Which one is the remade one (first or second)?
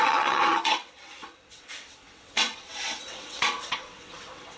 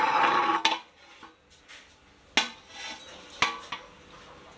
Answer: first